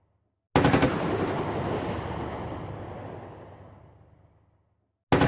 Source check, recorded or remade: recorded